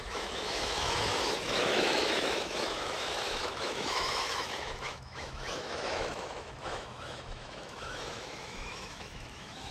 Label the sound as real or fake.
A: fake